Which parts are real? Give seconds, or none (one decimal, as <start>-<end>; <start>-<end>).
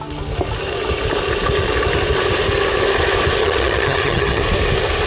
0.0-3.4; 4.4-5.1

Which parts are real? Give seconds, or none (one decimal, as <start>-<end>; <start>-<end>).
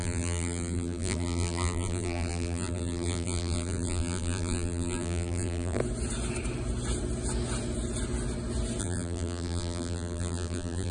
5.8-8.8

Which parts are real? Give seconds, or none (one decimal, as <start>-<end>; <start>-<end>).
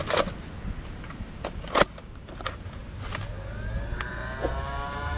0.0-0.8; 2.8-4.5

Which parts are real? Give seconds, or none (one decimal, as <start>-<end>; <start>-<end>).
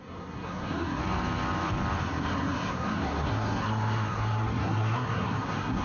1.0-2.0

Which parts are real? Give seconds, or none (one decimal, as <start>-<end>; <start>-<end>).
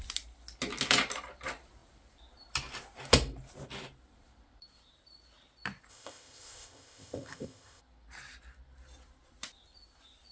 0.0-5.9; 7.8-10.3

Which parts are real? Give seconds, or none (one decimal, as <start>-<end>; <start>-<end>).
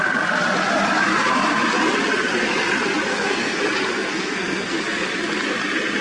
0.0-3.1; 3.6-4.1; 4.8-6.0